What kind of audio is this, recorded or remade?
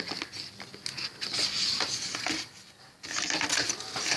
recorded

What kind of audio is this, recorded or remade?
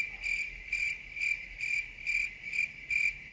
recorded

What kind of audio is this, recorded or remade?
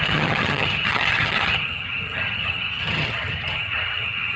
remade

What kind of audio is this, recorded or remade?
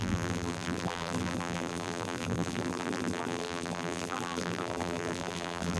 remade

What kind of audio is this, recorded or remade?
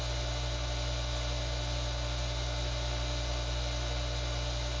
recorded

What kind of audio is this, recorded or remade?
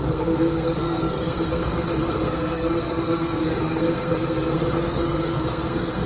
remade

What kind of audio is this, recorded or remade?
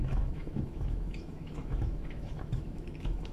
remade